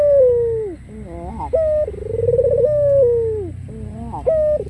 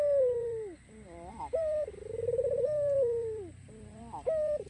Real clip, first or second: first